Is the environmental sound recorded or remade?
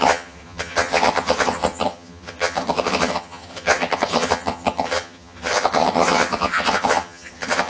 remade